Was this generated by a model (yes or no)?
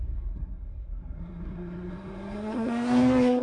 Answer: yes